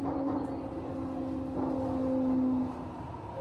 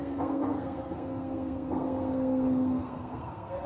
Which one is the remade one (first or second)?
second